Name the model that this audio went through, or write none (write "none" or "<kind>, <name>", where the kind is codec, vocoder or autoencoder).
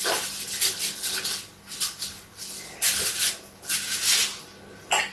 none